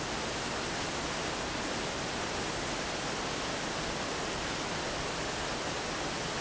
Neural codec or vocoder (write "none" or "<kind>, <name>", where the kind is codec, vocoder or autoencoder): none